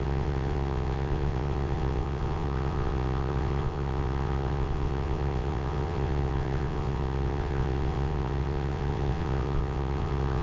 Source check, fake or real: fake